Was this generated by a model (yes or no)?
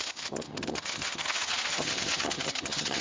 yes